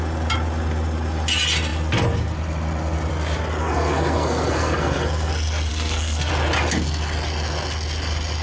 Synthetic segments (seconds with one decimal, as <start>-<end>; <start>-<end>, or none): 3.6-5.3; 5.7-6.3